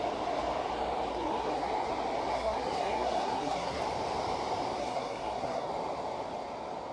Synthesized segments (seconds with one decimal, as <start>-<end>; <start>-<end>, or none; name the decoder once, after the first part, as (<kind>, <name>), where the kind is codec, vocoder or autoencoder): 1.1-1.9 (codec, SNAC); 2.3-3.8; 4.8-5.7